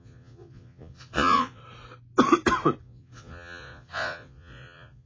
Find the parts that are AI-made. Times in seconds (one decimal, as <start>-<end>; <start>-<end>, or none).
0.0-1.6; 2.8-5.1